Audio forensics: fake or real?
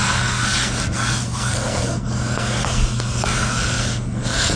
fake